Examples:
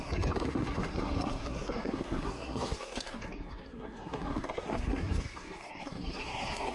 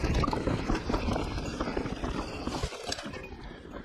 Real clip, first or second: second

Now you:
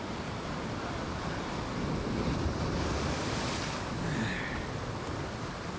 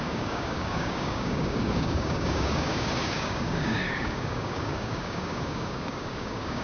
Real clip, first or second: first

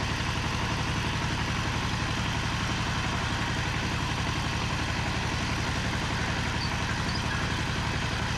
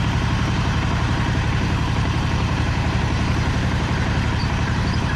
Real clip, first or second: first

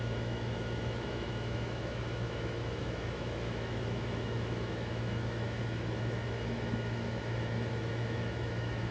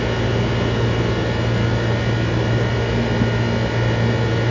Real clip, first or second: second